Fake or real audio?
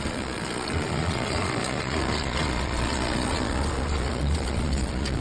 fake